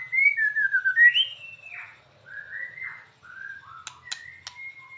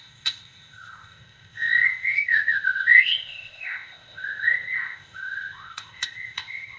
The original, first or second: first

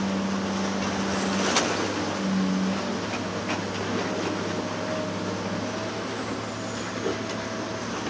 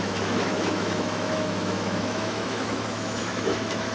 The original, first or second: first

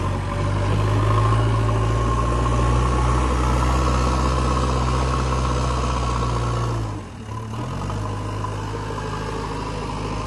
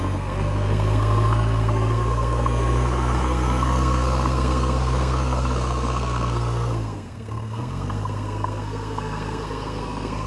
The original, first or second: first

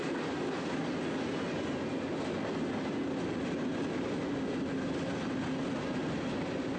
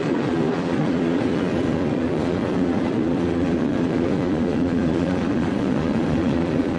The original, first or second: first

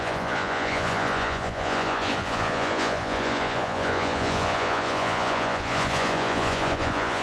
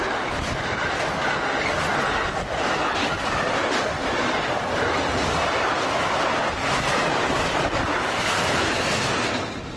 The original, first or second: second